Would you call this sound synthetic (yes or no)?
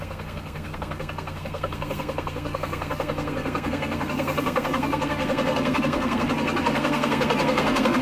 yes